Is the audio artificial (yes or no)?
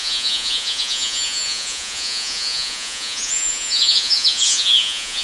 yes